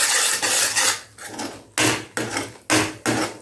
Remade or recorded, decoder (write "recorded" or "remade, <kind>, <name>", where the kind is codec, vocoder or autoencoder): recorded